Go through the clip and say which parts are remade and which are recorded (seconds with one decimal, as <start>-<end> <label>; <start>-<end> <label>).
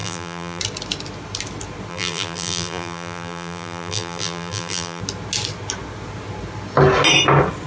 0.0-0.6 remade; 0.6-1.9 recorded; 1.9-5.0 remade; 5.0-7.7 recorded